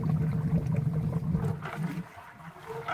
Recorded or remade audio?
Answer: recorded